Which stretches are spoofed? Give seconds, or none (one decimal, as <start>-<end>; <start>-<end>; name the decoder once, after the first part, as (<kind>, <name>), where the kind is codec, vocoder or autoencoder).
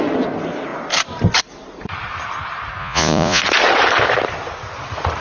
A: 2.8-3.4 (vocoder, Vocos)